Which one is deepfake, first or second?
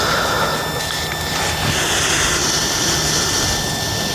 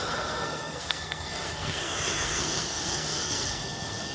second